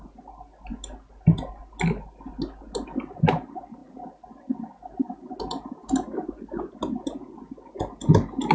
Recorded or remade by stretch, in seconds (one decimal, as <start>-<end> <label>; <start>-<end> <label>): 0.0-8.5 recorded